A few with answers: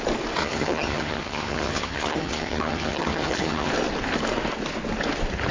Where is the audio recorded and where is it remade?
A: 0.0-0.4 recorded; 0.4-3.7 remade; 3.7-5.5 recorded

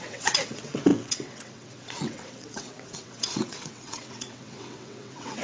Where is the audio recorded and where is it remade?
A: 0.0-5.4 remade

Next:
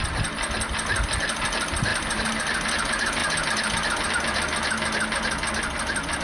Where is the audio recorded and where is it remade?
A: 0.0-1.9 recorded; 1.9-2.7 remade; 2.7-6.2 recorded

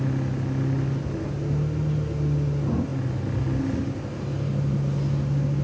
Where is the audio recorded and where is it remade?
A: 0.0-5.6 recorded